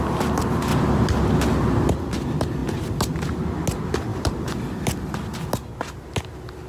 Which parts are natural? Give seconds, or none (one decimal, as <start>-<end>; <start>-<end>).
0.0-4.1; 5.0-6.7